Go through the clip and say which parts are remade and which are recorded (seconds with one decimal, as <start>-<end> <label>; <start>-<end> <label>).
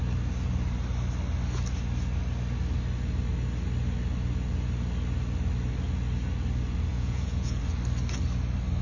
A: 0.0-6.9 recorded; 6.9-7.6 remade; 7.6-8.8 recorded